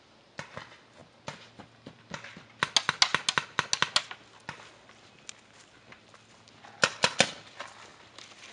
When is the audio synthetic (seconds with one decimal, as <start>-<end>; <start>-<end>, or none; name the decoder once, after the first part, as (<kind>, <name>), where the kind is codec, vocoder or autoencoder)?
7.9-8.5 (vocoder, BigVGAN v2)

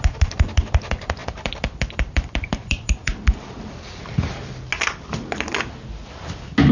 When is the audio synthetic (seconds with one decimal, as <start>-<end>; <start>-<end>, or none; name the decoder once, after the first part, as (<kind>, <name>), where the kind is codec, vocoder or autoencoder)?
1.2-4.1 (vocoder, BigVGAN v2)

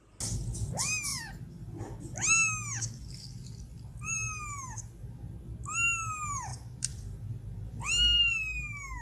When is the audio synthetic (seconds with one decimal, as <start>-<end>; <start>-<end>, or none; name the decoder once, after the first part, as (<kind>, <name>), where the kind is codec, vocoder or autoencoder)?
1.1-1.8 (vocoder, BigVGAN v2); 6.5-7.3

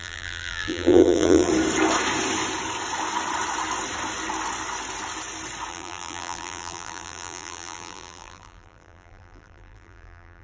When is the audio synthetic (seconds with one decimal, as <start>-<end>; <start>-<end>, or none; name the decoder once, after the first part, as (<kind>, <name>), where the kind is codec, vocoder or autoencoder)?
0.0-1.5 (vocoder, BigVGAN v2); 5.7-10.4

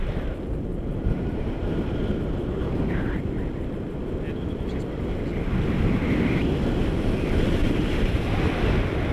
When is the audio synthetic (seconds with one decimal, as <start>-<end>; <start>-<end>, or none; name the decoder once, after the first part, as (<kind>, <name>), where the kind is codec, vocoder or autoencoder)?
0.7-3.1 (vocoder, BigVGAN v2); 7.6-8.4